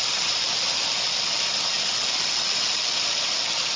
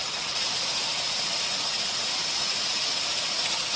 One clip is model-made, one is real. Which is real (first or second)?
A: first